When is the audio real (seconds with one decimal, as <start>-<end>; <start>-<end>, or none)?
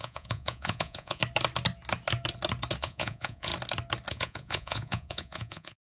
1.2-2.8; 3.5-4.1